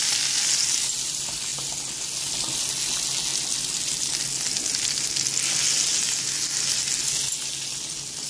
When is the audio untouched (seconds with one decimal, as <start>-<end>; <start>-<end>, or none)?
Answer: 0.0-8.3